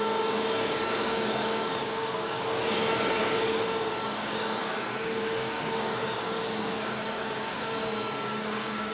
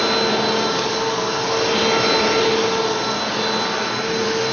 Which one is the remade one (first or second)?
first